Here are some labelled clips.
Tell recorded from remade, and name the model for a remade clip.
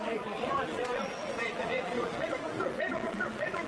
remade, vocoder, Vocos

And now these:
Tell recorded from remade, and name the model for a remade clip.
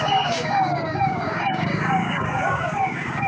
remade, codec, DAC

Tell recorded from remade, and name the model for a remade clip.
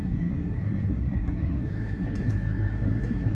remade, codec, SNAC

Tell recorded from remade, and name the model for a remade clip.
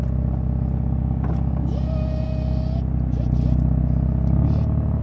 recorded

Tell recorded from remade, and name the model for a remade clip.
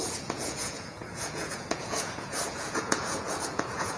remade, vocoder, Vocos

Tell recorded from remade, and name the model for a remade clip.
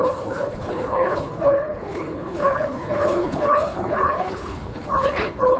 remade, codec, HILCodec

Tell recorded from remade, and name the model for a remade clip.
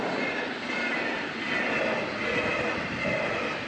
recorded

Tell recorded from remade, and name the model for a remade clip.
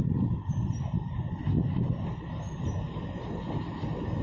recorded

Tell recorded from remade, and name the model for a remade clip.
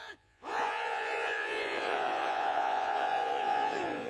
remade, vocoder, Vocos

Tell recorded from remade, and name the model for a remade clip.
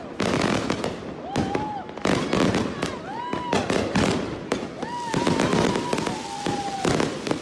recorded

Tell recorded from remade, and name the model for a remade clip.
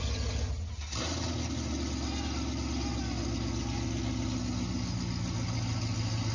recorded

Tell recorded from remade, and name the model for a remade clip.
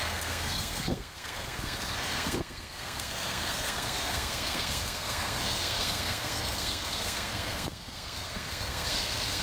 remade, codec, SNAC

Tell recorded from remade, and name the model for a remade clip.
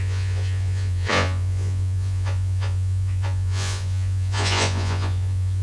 remade, vocoder, Vocos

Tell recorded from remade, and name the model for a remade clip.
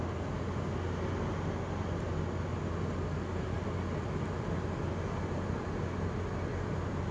recorded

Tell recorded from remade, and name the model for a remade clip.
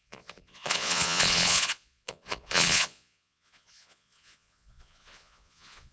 remade, vocoder, Vocos